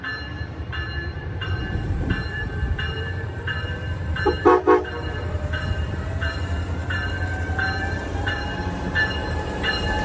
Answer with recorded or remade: remade